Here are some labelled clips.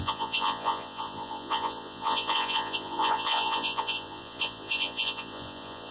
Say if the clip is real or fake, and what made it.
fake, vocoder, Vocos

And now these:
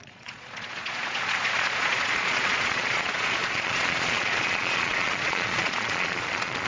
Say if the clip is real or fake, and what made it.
fake, vocoder, Vocos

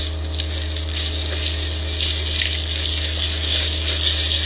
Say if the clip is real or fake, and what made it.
real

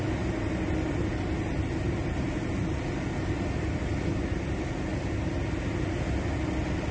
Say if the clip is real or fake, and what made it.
real